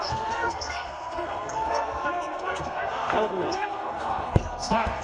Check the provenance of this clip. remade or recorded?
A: remade